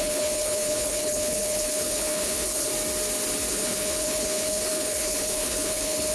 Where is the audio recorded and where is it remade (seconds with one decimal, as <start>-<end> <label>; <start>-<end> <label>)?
0.0-2.7 remade; 2.7-3.5 recorded; 3.5-6.1 remade